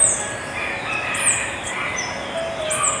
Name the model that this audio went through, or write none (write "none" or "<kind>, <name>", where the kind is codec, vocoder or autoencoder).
none